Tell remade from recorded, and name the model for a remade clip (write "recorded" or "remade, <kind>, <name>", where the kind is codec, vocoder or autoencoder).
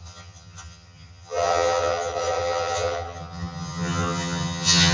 remade, vocoder, HiFi-GAN